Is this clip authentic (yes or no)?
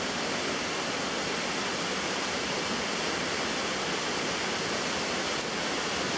yes